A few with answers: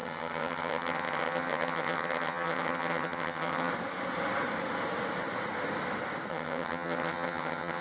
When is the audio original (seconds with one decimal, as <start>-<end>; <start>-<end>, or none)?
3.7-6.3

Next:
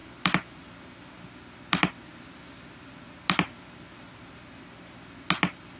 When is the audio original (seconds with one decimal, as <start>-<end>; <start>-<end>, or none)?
0.0-5.8

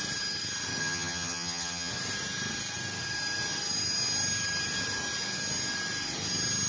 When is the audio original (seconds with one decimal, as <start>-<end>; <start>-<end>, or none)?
0.0-0.8; 1.9-6.7

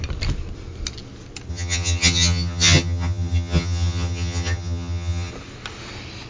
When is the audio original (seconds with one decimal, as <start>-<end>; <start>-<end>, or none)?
0.0-1.5; 5.3-6.3

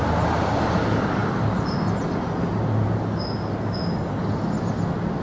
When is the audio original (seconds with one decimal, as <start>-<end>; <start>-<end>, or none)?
0.0-5.2

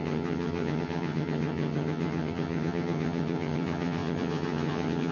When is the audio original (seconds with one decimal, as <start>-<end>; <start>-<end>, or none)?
none

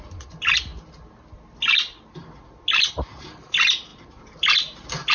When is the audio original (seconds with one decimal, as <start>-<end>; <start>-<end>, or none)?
0.0-5.1